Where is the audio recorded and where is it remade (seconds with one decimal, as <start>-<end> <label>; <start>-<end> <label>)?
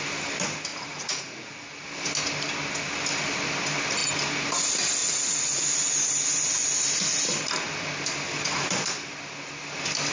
0.0-0.7 recorded; 0.7-1.5 remade; 1.5-5.0 recorded; 5.0-5.6 remade; 5.6-10.1 recorded